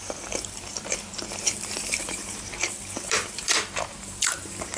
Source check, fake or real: fake